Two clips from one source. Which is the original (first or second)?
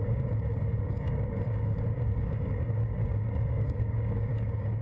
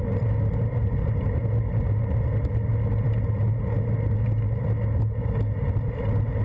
second